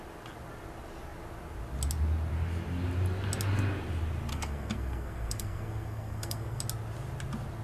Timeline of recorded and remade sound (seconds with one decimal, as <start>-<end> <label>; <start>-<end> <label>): 0.0-4.3 recorded; 4.3-6.6 remade; 6.6-7.6 recorded